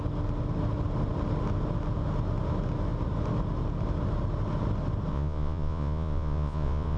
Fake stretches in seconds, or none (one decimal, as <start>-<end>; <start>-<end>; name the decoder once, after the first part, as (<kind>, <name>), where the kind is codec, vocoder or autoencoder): 5.1-7.0 (vocoder, Vocos)